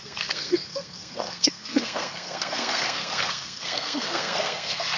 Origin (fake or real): fake